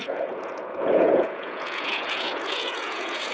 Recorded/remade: remade